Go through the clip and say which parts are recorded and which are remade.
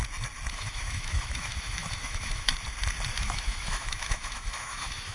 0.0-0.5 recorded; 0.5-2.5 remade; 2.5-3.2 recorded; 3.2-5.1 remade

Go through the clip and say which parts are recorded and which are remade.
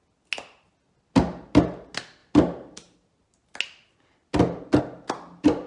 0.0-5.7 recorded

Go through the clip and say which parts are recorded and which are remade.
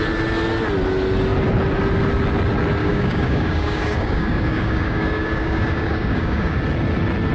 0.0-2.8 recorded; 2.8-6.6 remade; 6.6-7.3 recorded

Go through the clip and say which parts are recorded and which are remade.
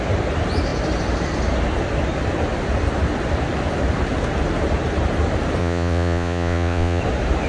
0.0-5.6 recorded; 5.6-7.0 remade; 7.0-7.5 recorded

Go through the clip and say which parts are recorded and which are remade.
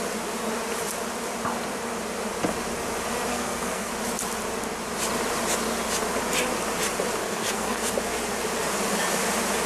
0.0-3.3 recorded; 3.3-3.9 remade; 3.9-7.2 recorded; 7.2-7.9 remade; 7.9-9.7 recorded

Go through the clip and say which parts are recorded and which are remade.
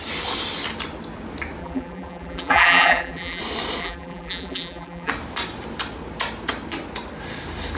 0.0-1.6 recorded; 1.6-3.4 remade; 3.4-3.8 recorded; 3.8-5.1 remade; 5.1-7.8 recorded